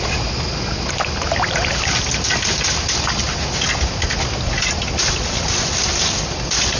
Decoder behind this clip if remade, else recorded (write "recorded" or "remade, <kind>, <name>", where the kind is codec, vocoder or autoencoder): recorded